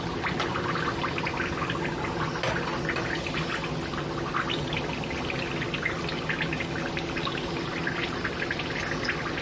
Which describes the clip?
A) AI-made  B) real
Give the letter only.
B